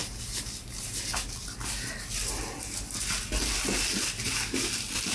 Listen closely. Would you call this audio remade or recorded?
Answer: recorded